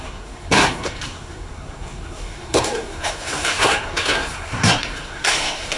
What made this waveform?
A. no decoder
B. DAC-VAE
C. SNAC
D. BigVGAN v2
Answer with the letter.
C